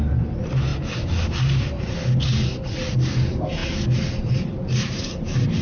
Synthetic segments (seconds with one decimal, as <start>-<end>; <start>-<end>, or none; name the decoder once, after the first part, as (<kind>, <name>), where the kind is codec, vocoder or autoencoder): none

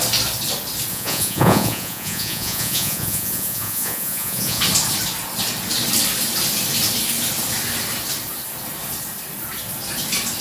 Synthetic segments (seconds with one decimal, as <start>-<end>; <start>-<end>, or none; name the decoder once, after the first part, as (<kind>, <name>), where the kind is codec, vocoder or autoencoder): 0.9-4.6 (vocoder, Vocos)

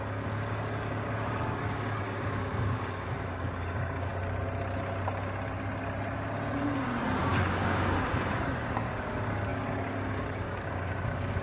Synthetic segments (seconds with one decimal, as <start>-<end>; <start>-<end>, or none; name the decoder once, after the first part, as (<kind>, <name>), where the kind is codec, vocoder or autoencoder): 0.0-4.1 (codec, DAC); 7.2-11.4

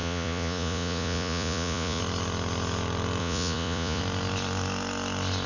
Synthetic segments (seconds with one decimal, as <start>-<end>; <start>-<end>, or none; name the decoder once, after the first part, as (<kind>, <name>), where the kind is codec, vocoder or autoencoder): 0.0-2.0 (vocoder, Vocos); 3.2-4.0

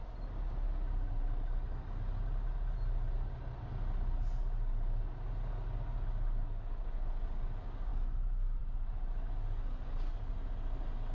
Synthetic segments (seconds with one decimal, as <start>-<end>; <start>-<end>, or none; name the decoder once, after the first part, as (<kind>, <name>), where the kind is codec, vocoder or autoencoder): none

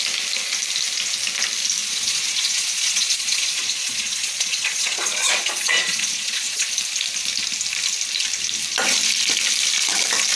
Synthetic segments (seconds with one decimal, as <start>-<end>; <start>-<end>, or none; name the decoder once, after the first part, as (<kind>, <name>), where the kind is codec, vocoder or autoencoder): 1.8-6.7 (vocoder, Vocos)